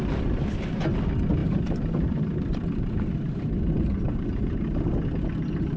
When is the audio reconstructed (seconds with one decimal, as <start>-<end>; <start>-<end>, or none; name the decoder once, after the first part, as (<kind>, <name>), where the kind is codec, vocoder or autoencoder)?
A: 1.4-4.9 (vocoder, BigVGAN v2)